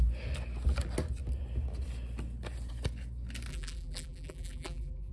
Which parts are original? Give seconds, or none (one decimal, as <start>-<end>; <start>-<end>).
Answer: 0.0-3.5